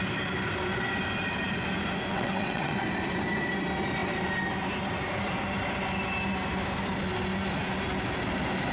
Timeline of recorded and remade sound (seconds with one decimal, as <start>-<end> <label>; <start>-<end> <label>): 0.0-2.1 recorded; 2.1-2.8 remade; 2.8-8.7 recorded